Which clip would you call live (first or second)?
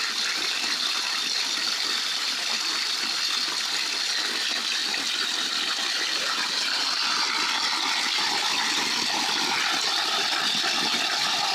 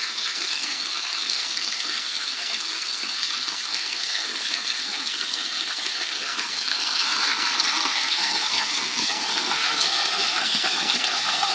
first